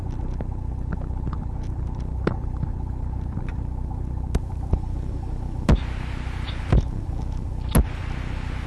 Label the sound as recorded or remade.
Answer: recorded